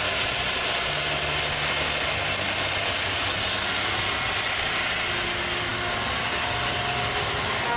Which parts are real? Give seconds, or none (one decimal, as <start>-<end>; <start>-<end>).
0.0-7.8